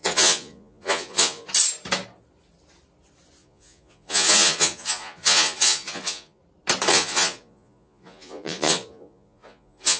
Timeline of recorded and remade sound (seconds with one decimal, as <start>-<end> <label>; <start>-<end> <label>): 0.0-1.5 remade; 1.5-3.4 recorded; 3.4-6.4 remade; 6.4-6.9 recorded; 6.9-10.0 remade